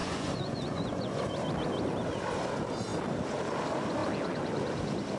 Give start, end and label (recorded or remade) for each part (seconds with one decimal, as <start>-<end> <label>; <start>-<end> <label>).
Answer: 0.0-1.2 remade; 1.2-5.2 recorded